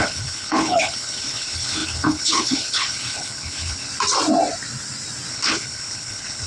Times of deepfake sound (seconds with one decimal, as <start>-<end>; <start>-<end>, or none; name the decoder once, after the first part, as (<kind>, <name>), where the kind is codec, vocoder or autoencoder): 0.0-3.9 (codec, HILCodec); 5.3-6.5